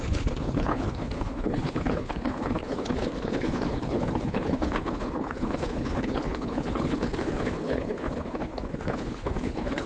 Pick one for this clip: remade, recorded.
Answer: remade